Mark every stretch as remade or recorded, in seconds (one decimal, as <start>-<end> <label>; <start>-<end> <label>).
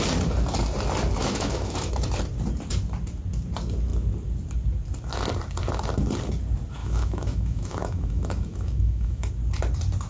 0.0-1.2 recorded; 1.2-1.9 remade; 1.9-6.8 recorded; 6.8-9.3 remade; 9.3-10.1 recorded